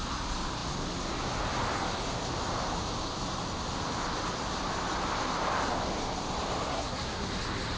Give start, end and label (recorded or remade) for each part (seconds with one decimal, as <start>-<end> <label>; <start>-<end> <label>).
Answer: 0.0-6.7 recorded; 6.7-7.3 remade; 7.3-7.8 recorded